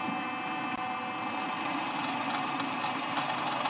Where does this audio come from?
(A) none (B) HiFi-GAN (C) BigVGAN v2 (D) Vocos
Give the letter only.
A